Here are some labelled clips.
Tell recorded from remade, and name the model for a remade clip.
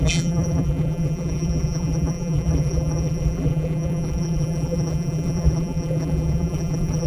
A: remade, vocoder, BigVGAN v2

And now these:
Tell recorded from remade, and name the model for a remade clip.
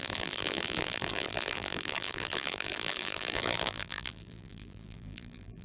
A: remade, vocoder, BigVGAN v2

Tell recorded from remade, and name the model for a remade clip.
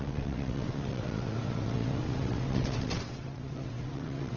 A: remade, vocoder, WaveNeXt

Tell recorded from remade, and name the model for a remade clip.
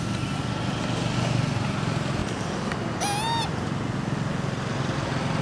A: recorded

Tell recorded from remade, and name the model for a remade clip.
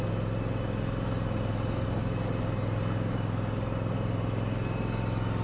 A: recorded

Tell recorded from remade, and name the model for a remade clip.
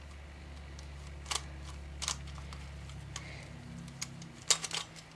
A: recorded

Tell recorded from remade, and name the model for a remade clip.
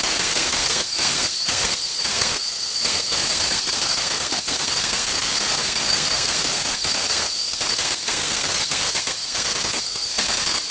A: remade, codec, SNAC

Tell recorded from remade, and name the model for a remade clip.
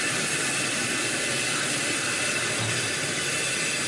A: recorded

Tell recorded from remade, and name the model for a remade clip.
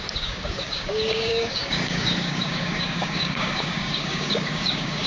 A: remade, codec, DAC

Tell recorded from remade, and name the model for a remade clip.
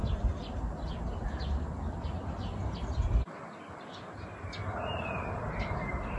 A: recorded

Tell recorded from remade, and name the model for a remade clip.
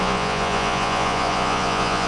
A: remade, vocoder, Vocos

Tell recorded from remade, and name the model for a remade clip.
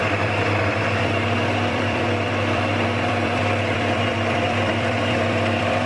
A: remade, vocoder, BigVGAN v2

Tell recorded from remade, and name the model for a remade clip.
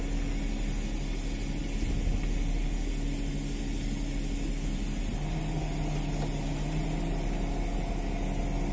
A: recorded